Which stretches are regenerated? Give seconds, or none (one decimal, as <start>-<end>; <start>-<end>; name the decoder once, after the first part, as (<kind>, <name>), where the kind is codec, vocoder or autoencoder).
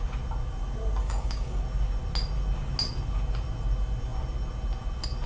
1.0-1.6 (codec, DAC)